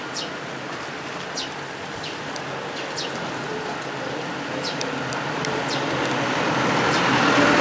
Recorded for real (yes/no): no